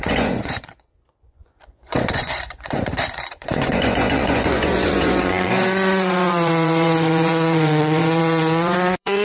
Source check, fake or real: fake